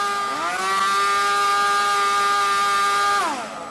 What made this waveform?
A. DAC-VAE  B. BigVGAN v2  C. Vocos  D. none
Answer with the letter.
D